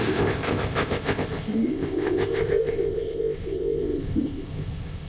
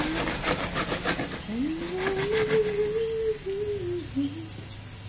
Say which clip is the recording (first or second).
second